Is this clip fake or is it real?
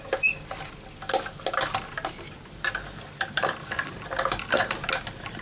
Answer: real